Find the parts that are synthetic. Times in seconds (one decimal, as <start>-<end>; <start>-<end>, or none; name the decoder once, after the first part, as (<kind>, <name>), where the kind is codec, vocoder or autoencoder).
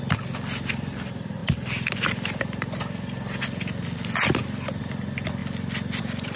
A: none